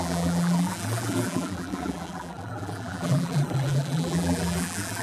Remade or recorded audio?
remade